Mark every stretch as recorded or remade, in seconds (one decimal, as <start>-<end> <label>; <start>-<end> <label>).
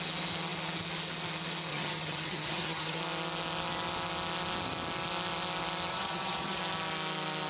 0.0-1.7 recorded; 1.7-3.0 remade; 3.0-5.9 recorded; 5.9-6.6 remade; 6.6-7.5 recorded